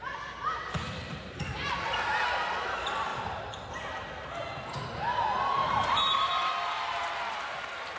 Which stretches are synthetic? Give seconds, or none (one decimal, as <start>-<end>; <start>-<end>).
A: 1.0-1.5; 3.1-4.1; 5.6-6.3